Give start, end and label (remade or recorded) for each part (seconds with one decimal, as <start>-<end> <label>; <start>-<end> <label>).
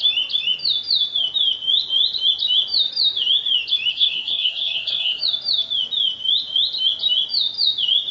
0.0-3.9 recorded; 3.9-5.2 remade; 5.2-8.1 recorded